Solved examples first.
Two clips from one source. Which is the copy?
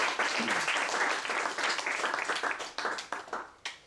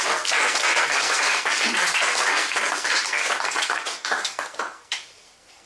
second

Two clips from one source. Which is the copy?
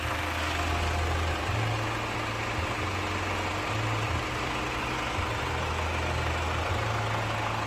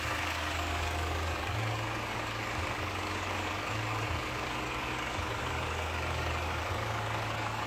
second